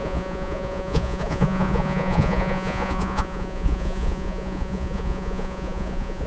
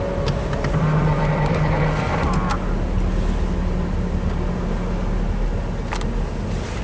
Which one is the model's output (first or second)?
first